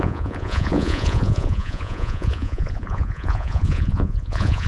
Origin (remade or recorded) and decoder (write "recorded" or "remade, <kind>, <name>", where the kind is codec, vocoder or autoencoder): remade, vocoder, Vocos